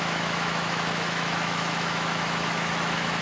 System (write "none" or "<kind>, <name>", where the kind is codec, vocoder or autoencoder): autoencoder, DAC-VAE